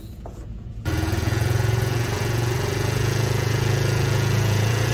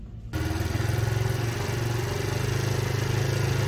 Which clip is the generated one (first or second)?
first